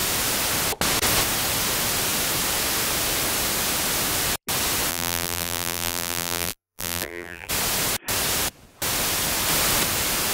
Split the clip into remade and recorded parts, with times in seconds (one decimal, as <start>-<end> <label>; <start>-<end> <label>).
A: 0.0-4.9 recorded; 4.9-7.5 remade; 7.5-10.3 recorded